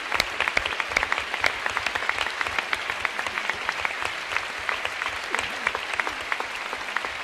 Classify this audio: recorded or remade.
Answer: recorded